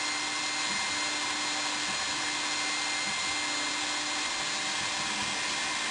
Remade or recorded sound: recorded